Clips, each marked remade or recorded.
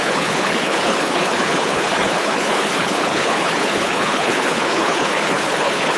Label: remade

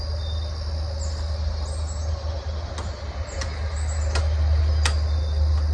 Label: recorded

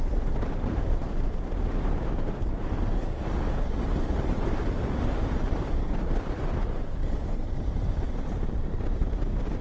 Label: remade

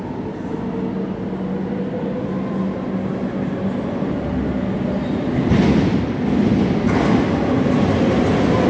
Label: recorded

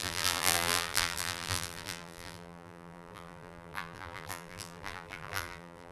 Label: remade